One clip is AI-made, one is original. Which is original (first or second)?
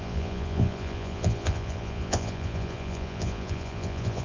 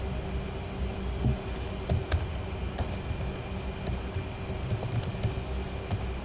second